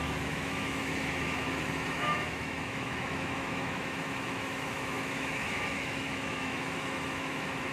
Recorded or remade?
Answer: remade